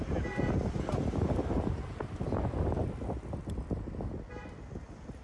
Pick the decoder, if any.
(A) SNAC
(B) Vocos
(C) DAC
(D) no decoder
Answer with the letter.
D